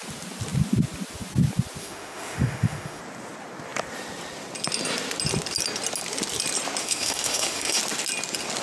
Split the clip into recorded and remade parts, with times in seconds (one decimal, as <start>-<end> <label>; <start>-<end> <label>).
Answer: 0.0-1.8 recorded; 1.8-3.0 remade; 3.0-6.8 recorded; 6.8-7.8 remade; 7.8-8.6 recorded

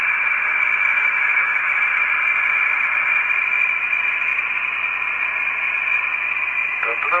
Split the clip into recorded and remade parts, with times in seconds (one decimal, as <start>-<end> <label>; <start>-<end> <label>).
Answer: 0.0-1.0 recorded; 1.0-1.8 remade; 1.8-7.2 recorded

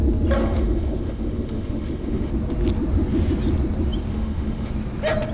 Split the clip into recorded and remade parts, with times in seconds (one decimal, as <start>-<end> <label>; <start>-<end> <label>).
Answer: 0.0-0.4 recorded; 0.4-2.3 remade; 2.3-4.1 recorded; 4.1-4.7 remade; 4.7-5.3 recorded

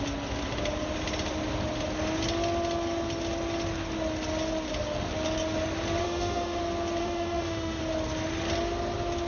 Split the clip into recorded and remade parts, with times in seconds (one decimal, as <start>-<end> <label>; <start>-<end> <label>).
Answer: 0.0-6.0 recorded; 6.0-6.6 remade; 6.6-7.0 recorded; 7.0-7.8 remade; 7.8-9.3 recorded